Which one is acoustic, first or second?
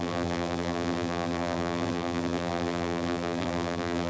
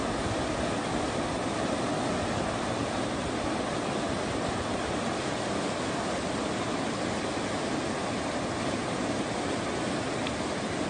second